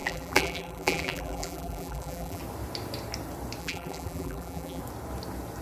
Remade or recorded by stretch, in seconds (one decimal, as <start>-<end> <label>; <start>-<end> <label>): 0.0-2.4 remade; 2.4-3.6 recorded; 3.6-4.8 remade; 4.8-5.6 recorded